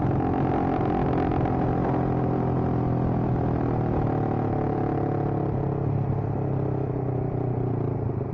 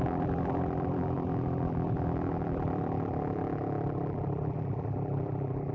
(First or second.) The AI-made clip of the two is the second